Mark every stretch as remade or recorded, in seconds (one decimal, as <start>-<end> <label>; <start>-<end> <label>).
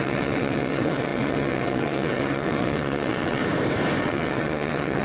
0.0-3.4 remade; 3.4-4.0 recorded; 4.0-5.0 remade